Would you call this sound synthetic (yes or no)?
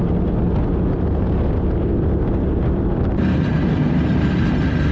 no